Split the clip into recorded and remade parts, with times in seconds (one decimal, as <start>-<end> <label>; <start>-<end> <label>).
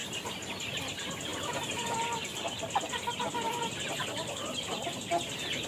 0.0-0.8 recorded; 0.8-5.7 remade